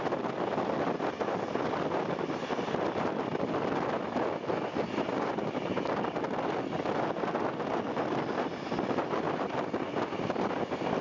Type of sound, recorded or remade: recorded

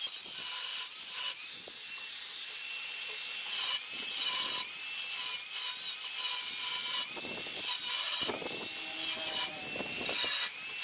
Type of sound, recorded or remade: recorded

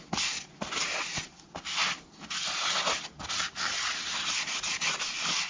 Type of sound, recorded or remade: recorded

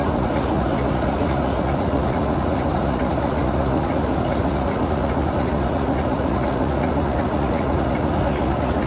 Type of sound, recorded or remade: remade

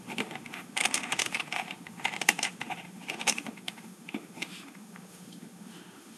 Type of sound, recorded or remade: remade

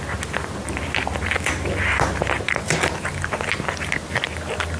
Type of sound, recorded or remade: recorded